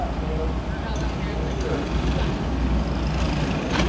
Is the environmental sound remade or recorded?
recorded